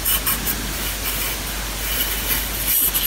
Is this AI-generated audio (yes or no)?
no